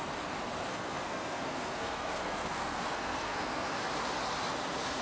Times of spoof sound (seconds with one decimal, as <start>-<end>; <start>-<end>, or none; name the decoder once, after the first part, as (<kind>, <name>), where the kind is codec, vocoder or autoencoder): 0.7-3.7 (codec, SNAC)